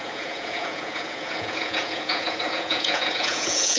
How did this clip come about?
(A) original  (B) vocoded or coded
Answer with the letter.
B